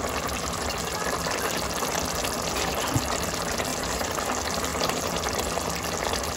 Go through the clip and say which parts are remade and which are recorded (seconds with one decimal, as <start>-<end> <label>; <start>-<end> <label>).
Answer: 0.0-3.7 recorded; 3.7-4.2 remade; 4.2-4.7 recorded; 4.7-5.2 remade; 5.2-6.4 recorded